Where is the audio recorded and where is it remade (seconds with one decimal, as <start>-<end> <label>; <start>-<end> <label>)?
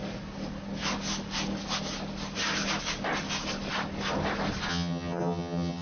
0.0-4.7 recorded; 4.7-5.8 remade